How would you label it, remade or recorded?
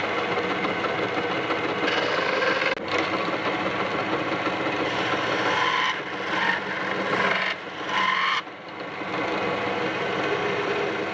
recorded